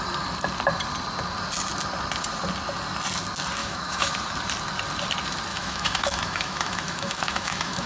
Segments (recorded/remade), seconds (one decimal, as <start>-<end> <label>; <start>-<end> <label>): 0.0-3.6 recorded; 3.6-4.1 remade; 4.1-5.5 recorded; 5.5-7.9 remade